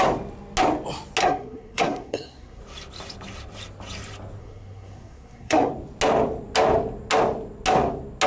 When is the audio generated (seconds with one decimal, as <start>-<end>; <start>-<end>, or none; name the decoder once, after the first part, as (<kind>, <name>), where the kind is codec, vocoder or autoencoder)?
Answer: 1.2-2.6 (codec, SNAC); 4.4-5.7